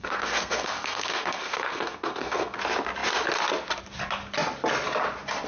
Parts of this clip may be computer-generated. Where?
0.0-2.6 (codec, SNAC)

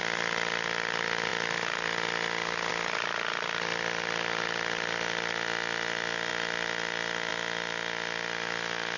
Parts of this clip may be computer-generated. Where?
none

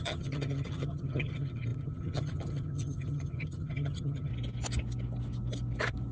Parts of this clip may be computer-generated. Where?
0.0-4.3 (vocoder, HiFi-GAN)

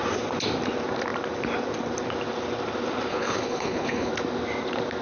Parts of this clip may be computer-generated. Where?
3.1-4.1 (codec, HILCodec)

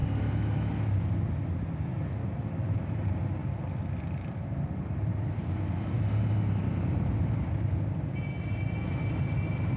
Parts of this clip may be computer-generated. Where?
none